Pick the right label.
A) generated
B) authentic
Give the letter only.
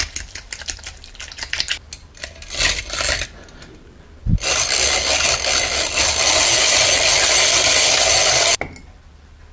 B